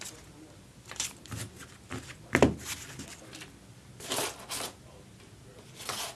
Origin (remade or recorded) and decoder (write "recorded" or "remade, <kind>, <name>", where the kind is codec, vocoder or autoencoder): recorded